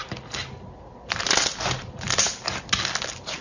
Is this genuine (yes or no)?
yes